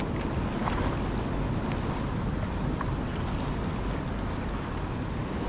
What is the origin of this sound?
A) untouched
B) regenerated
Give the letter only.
A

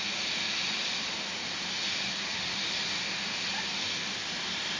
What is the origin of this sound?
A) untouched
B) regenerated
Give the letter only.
A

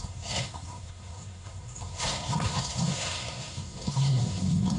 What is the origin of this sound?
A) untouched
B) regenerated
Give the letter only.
B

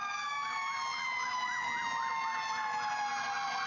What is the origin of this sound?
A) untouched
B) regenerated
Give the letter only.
A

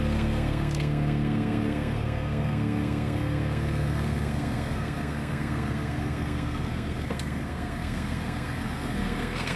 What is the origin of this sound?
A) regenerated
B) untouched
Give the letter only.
A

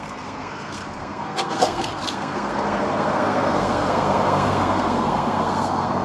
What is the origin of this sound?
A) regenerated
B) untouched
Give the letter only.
A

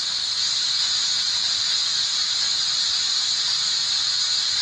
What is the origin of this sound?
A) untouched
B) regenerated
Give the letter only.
A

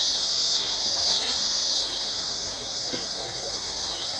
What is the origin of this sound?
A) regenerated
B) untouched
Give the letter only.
A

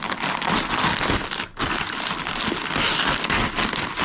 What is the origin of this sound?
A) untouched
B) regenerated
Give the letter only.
A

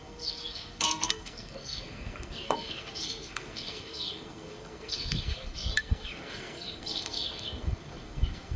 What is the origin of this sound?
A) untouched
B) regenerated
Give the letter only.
B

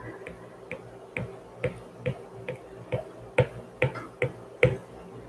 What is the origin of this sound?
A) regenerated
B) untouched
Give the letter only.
B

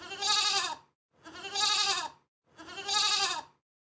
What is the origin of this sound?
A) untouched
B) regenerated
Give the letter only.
A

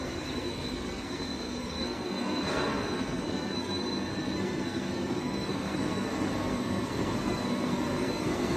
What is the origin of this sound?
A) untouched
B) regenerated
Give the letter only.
B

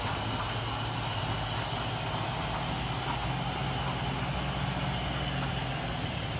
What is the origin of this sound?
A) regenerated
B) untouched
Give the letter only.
B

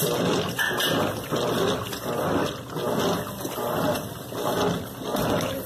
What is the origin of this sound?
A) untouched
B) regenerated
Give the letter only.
A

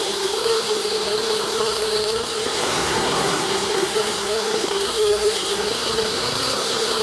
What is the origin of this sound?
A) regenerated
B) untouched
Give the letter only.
A